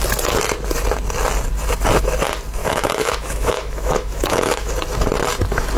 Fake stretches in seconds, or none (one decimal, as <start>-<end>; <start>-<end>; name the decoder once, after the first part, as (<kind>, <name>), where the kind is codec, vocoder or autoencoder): 2.6-4.7 (autoencoder, DAC-VAE)

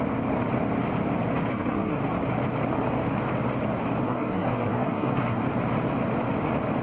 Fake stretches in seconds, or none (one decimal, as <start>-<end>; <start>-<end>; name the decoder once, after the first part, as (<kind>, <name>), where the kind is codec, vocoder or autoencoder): 1.5-2.0 (codec, SNAC); 4.0-5.4

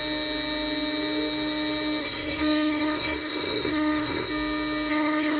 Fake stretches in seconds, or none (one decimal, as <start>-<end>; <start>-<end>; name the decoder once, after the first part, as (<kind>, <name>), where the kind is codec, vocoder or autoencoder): 2.0-4.3 (codec, SNAC); 4.9-5.4

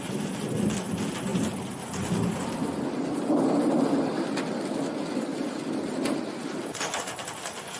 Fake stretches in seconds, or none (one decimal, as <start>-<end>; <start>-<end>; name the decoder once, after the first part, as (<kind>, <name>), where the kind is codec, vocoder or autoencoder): none

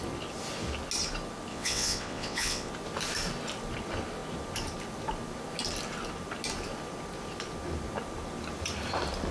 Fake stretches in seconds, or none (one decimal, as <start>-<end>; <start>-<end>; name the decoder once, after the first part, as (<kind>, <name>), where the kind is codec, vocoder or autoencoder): 1.5-2.7 (vocoder, WaveNeXt)

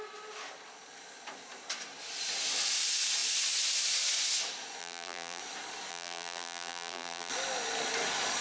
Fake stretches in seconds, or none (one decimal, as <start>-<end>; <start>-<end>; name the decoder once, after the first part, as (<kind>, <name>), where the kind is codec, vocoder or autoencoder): 4.8-5.4 (vocoder, BigVGAN v2); 5.9-7.3

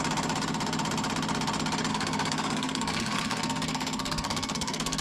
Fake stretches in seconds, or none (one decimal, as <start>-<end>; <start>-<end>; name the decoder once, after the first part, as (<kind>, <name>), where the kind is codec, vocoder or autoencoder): 1.9-5.0 (codec, SNAC)

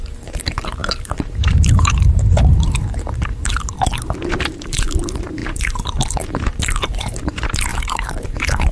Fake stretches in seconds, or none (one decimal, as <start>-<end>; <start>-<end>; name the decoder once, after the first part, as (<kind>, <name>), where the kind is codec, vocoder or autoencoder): 0.0-3.9 (vocoder, BigVGAN v2); 4.4-8.7